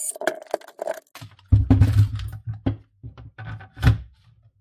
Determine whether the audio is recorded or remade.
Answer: recorded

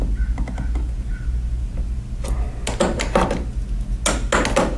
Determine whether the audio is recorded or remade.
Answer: recorded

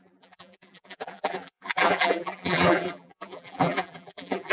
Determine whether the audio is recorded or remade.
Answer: remade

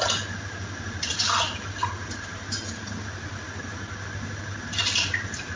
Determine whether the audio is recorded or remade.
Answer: recorded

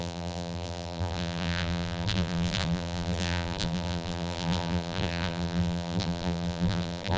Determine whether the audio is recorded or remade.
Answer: remade